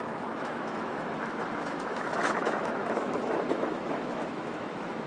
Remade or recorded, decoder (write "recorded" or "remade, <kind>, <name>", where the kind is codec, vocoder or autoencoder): remade, autoencoder, DAC-VAE